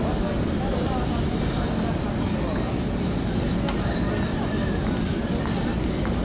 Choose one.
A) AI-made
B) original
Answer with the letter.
B